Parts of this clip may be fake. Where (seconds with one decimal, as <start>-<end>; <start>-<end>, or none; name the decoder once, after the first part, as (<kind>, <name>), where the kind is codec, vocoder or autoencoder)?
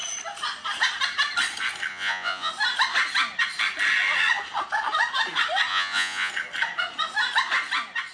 1.9-2.5 (vocoder, Vocos); 5.7-6.3